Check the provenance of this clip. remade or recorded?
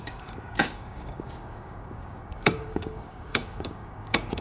remade